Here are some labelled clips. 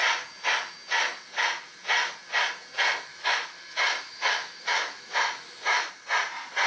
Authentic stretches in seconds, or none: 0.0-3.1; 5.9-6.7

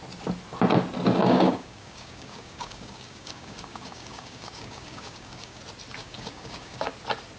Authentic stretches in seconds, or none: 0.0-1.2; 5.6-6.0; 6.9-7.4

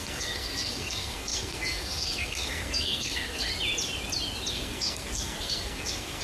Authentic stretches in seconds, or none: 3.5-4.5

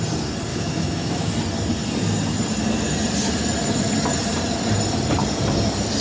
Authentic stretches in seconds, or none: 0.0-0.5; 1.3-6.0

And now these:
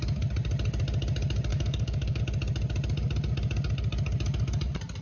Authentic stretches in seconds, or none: 0.0-1.5; 2.2-5.0

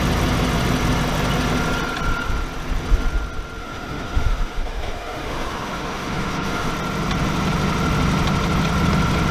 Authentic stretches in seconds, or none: 0.0-3.6; 6.7-9.3

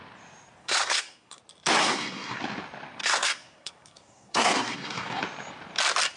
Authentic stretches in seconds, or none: 0.0-0.6; 1.4-1.8; 2.4-3.0; 5.2-6.2

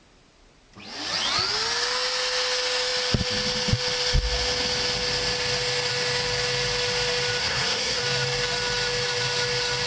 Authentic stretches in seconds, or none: 0.0-7.4; 8.0-9.9